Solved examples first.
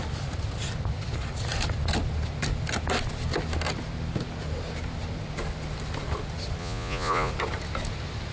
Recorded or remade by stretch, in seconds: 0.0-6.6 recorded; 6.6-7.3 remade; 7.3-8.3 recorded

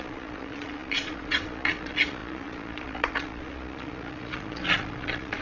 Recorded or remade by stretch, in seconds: 0.0-5.4 remade

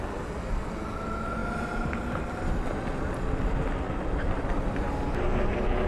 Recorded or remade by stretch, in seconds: 0.0-5.9 recorded